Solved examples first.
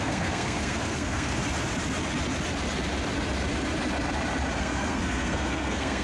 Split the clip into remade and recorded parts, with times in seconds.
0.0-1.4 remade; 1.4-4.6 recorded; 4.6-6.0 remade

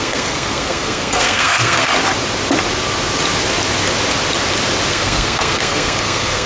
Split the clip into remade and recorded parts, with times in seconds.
0.0-1.9 remade; 1.9-4.9 recorded; 4.9-6.5 remade

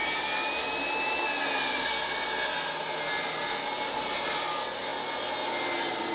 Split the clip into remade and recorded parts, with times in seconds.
0.0-6.1 recorded

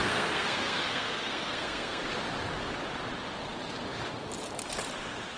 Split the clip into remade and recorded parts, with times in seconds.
0.0-2.0 remade; 2.0-5.4 recorded

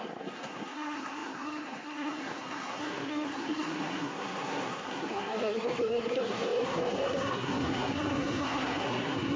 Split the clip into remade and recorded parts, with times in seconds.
0.0-9.4 remade

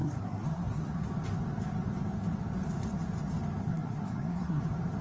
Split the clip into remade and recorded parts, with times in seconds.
0.0-0.9 remade; 0.9-3.6 recorded; 3.6-4.6 remade; 4.6-5.0 recorded

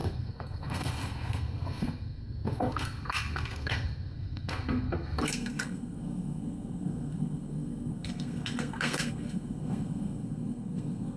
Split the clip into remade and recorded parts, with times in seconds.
0.0-11.2 remade

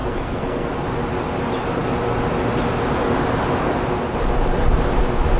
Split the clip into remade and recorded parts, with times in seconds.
0.0-0.7 remade; 0.7-5.4 recorded